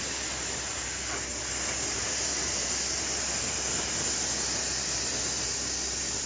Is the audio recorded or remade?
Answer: recorded